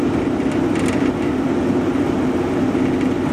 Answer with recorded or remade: recorded